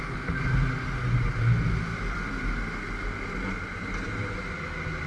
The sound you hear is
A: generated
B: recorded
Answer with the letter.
B